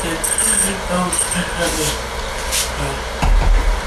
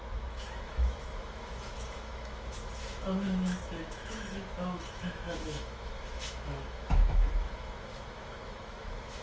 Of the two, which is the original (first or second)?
first